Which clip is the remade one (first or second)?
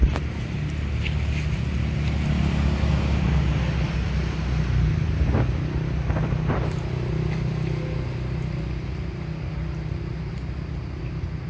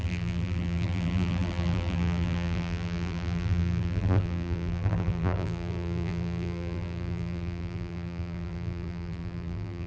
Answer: second